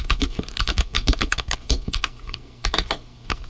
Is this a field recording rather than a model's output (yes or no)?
no